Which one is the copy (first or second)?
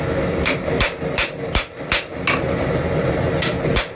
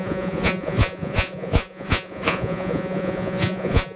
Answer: second